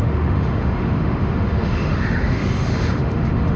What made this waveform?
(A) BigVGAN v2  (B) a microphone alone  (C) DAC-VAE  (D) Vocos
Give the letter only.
C